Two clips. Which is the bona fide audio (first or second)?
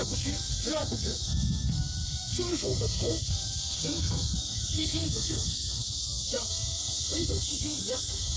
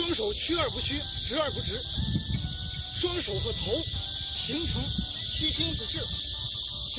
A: second